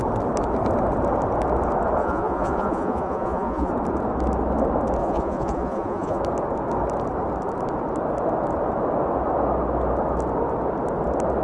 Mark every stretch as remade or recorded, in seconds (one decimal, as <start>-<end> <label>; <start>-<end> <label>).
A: 0.0-2.0 recorded; 2.0-3.7 remade; 3.7-5.0 recorded; 5.0-6.2 remade; 6.2-11.4 recorded